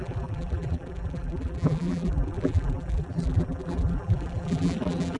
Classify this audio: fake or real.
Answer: fake